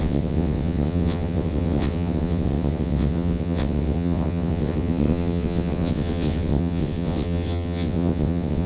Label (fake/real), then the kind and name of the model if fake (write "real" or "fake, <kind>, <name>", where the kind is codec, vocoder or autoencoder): fake, vocoder, WaveNeXt